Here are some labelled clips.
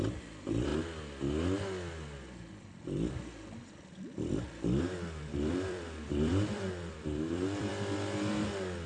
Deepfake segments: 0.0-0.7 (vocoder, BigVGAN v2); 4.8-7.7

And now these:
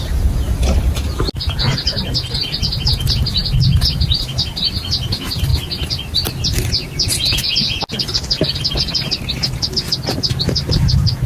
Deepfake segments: none

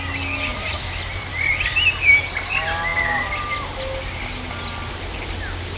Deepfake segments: 0.5-1.3 (vocoder, BigVGAN v2)

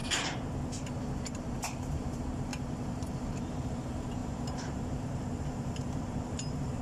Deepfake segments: 1.2-6.8 (vocoder, BigVGAN v2)

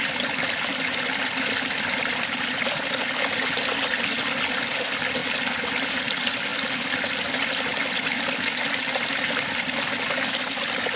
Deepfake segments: none

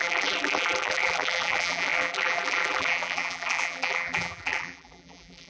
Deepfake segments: 0.0-5.5 (vocoder, BigVGAN v2)

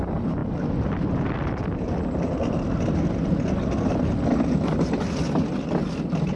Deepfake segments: none

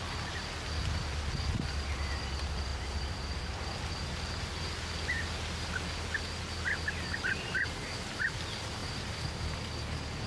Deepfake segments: 2.7-3.9 (vocoder, BigVGAN v2); 8.8-9.7